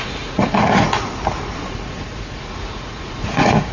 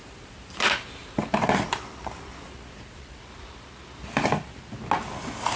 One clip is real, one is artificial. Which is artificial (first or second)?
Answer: first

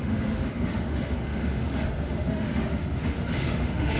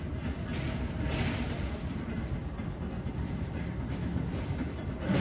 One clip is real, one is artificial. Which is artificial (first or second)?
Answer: first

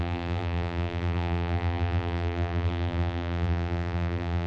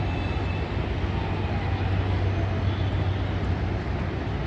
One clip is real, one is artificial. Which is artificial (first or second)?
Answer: first